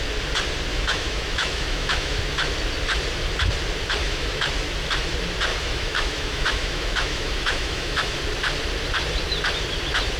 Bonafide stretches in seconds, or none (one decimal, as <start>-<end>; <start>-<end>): 0.0-0.7; 2.2-4.0; 4.5-5.5; 8.2-10.2